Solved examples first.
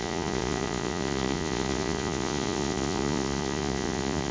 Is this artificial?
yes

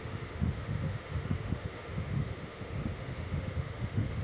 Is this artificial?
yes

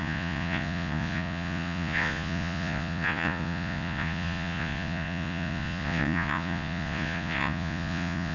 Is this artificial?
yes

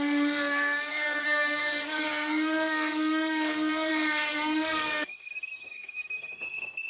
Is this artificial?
yes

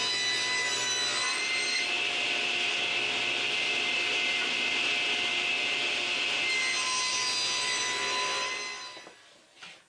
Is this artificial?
no